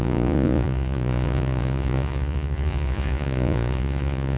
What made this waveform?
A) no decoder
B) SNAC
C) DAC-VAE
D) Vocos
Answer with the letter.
D